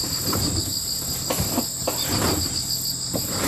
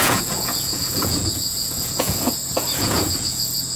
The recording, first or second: first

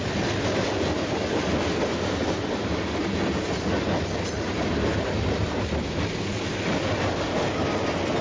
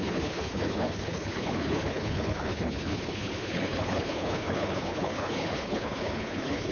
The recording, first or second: first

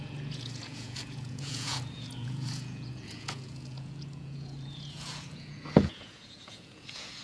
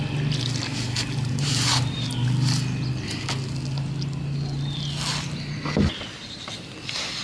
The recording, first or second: second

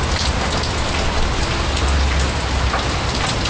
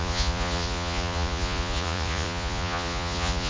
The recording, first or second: first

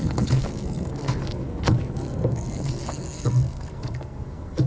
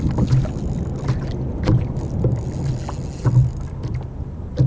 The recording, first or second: second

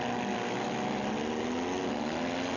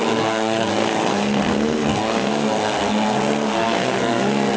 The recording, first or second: first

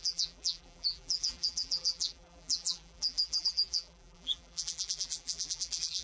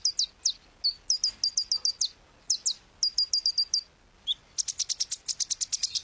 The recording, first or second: second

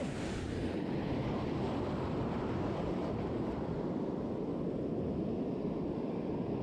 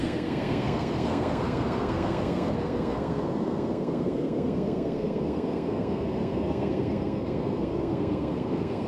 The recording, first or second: first